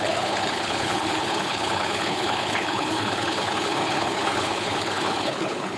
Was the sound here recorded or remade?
remade